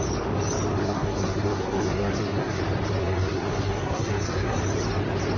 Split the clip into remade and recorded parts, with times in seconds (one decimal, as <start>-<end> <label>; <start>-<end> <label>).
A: 0.0-0.8 recorded; 0.8-2.6 remade; 2.6-3.0 recorded; 3.0-4.6 remade; 4.6-5.4 recorded